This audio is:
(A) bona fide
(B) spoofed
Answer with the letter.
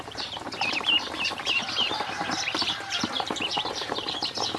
B